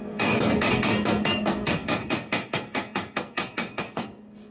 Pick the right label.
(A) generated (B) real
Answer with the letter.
A